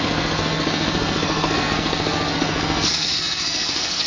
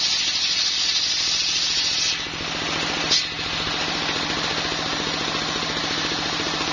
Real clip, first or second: second